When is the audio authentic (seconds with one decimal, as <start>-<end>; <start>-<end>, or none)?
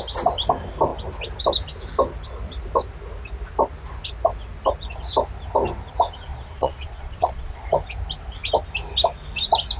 0.0-6.3; 7.7-9.8